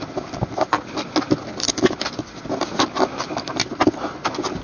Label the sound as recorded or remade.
recorded